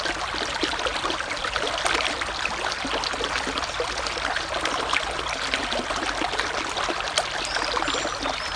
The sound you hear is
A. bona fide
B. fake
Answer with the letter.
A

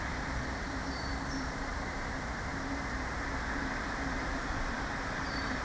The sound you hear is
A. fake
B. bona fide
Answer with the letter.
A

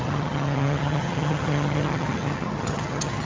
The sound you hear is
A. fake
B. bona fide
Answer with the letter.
A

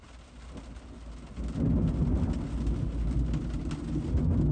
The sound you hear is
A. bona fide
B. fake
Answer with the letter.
A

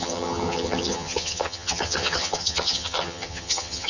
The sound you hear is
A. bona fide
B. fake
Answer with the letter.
B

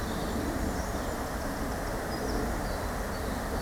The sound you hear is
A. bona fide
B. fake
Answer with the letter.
A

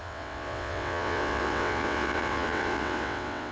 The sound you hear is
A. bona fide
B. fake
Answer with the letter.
B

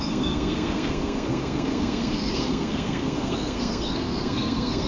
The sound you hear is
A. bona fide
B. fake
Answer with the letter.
B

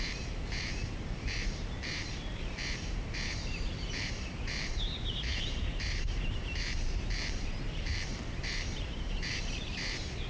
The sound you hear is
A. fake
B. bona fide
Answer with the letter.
A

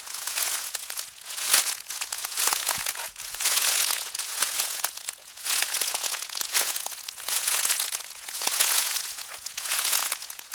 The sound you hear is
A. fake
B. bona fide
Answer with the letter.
A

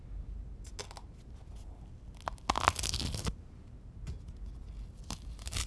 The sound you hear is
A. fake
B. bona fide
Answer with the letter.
B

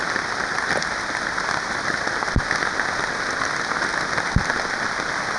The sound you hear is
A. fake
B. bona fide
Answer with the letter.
B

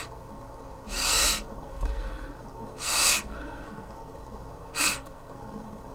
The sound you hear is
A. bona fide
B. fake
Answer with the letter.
B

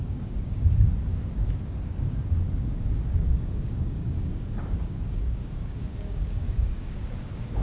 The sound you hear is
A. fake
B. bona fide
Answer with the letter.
A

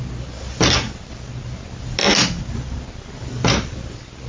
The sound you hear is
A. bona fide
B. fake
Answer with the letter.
A